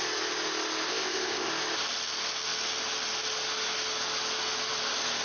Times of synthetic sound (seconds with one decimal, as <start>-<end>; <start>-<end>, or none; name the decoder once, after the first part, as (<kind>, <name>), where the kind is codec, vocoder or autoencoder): 0.9-1.5 (codec, ZipCodec)